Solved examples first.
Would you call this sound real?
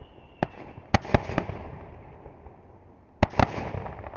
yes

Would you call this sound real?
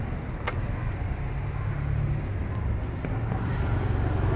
yes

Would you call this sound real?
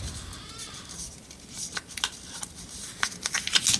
yes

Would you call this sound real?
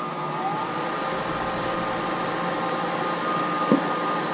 yes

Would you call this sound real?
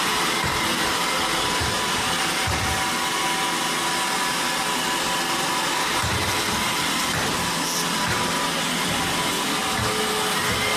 yes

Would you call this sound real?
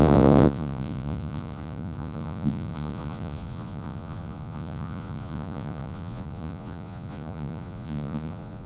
no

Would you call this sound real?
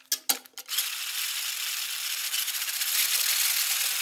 yes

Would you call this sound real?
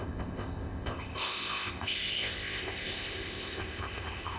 no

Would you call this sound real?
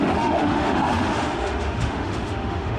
no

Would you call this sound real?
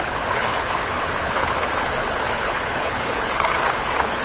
no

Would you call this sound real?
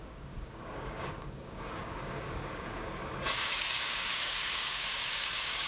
no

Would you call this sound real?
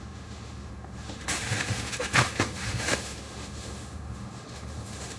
no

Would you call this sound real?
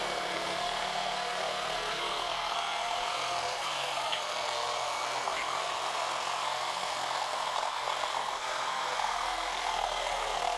no